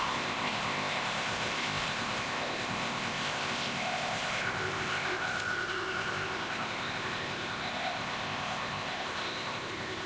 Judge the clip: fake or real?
fake